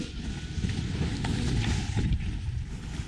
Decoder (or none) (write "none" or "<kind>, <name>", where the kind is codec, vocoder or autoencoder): none